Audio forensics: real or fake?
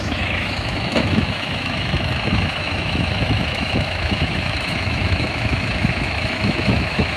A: fake